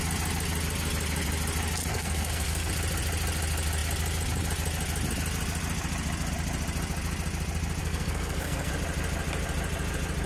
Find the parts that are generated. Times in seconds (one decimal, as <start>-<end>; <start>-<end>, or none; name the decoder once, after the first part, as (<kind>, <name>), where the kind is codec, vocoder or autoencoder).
1.9-2.7 (codec, SNAC); 7.8-8.7

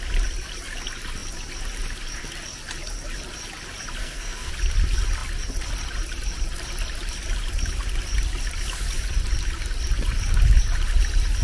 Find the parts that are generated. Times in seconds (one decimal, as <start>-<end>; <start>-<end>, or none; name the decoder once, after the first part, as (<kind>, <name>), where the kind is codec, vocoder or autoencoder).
4.0-4.5 (codec, SNAC)